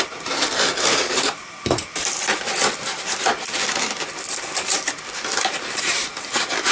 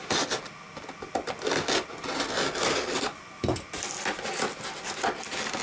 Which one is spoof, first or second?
first